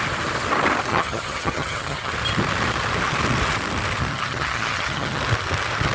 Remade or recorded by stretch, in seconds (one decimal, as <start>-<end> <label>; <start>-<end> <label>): 0.0-0.9 recorded; 0.9-2.1 remade; 2.1-4.1 recorded; 4.1-5.2 remade; 5.2-5.9 recorded